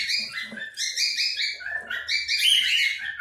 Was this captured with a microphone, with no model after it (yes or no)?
yes